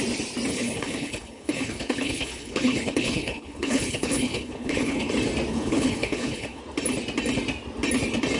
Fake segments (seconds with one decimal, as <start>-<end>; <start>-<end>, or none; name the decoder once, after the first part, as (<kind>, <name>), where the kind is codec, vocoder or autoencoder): 0.5-5.1 (codec, HILCodec); 5.5-6.6